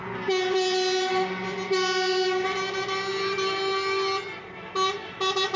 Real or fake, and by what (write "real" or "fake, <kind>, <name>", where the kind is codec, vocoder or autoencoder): real